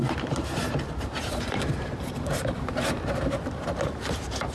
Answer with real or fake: fake